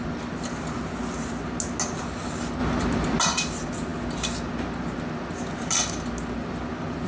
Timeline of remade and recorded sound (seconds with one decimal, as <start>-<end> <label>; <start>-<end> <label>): 0.0-2.6 recorded; 2.6-3.2 remade; 3.2-7.1 recorded